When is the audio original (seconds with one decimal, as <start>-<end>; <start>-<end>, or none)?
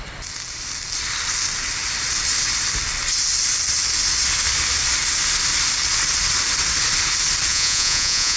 0.0-7.5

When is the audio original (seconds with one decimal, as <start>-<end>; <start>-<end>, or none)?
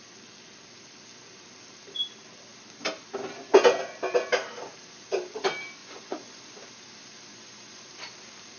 0.0-5.8; 6.4-7.3; 7.9-8.6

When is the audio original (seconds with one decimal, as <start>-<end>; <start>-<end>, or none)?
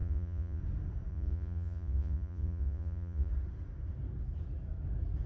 0.6-1.1; 3.3-5.3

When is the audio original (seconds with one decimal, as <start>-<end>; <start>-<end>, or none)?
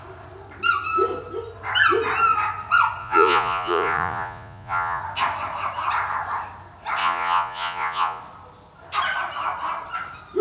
0.0-3.0; 5.0-7.0; 8.2-10.4